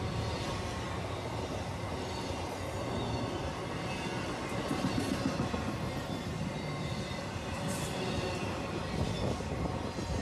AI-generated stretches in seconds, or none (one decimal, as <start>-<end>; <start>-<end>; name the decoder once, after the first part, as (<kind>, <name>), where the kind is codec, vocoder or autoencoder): none